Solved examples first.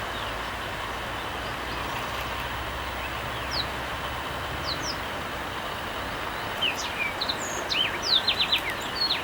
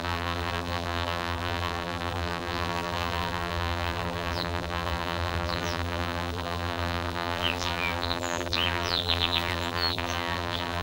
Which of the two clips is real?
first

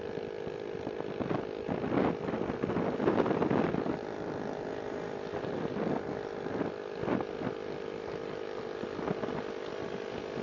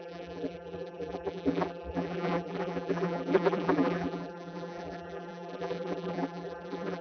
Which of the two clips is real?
first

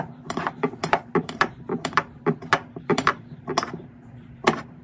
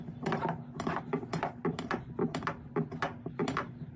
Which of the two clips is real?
second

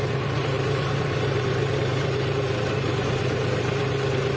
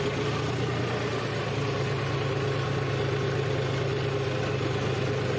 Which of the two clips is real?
second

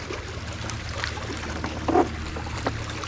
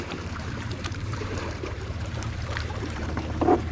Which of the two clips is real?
first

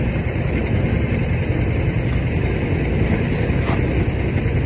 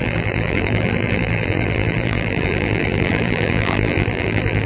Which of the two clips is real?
first